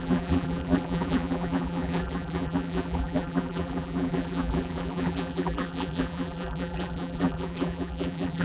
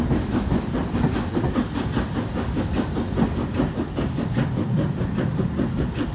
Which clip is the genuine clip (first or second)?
second